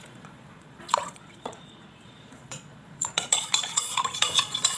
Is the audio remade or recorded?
remade